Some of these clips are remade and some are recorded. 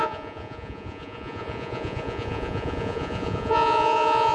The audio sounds remade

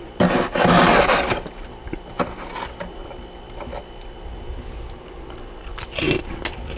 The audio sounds recorded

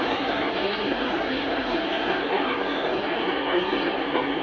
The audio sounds remade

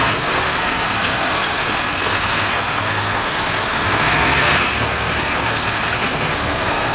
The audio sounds remade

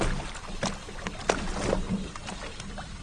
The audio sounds recorded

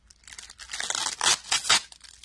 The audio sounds recorded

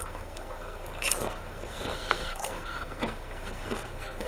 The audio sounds remade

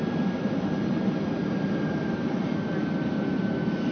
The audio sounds recorded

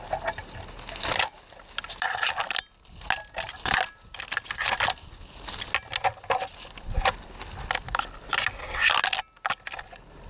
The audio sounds recorded